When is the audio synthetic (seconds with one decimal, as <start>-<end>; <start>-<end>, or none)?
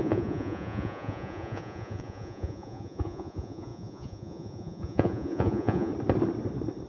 0.0-5.9